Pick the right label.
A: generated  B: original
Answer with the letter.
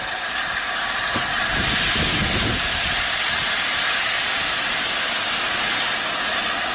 B